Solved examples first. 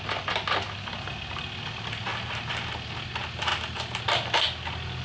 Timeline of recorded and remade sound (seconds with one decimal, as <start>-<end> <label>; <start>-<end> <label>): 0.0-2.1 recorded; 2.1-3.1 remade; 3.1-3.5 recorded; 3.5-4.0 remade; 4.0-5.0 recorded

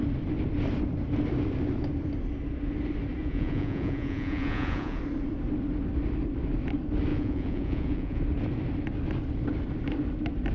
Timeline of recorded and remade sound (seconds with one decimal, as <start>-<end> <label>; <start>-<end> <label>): 0.0-3.2 recorded; 3.2-5.0 remade; 5.0-7.1 recorded; 7.1-8.2 remade; 8.2-10.5 recorded

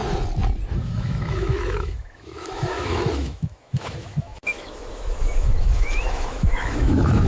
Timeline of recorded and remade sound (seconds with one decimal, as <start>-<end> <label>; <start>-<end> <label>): 0.0-0.7 recorded; 0.7-7.3 remade